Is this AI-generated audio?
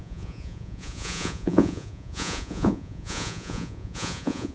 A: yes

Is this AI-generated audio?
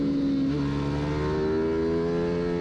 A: no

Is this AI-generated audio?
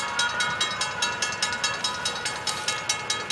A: no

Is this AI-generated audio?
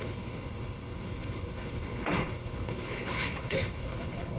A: yes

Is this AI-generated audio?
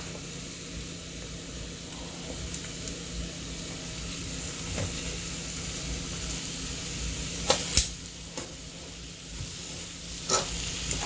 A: no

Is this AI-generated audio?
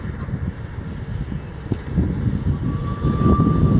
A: no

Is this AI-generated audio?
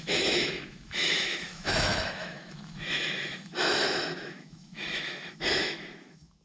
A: yes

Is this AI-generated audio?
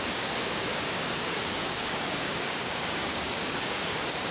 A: yes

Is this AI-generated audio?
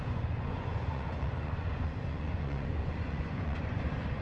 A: yes